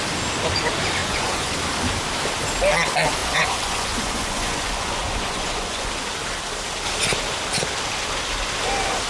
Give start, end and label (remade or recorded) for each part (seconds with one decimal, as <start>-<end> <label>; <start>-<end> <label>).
0.0-1.0 recorded; 1.0-1.5 remade; 1.5-3.2 recorded; 3.2-5.9 remade; 5.9-9.1 recorded